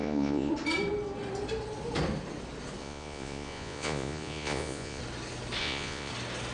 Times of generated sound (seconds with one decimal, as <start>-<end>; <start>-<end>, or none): 0.0-0.5; 2.8-5.0; 5.6-6.1